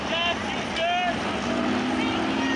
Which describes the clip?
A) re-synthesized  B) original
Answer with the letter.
B